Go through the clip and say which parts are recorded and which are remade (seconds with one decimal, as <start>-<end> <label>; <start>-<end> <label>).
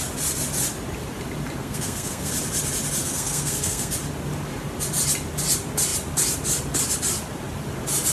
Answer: 0.0-1.6 recorded; 1.6-2.3 remade; 2.3-3.0 recorded; 3.0-3.9 remade; 3.9-8.1 recorded